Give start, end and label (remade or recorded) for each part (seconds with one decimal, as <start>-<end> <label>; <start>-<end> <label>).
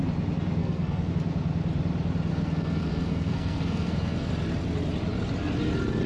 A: 0.0-0.6 recorded; 0.6-1.1 remade; 1.1-2.3 recorded; 2.3-4.3 remade; 4.3-6.1 recorded